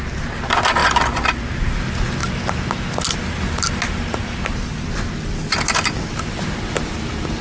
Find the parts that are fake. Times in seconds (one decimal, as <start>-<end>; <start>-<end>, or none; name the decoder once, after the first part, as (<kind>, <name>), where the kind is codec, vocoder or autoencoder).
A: none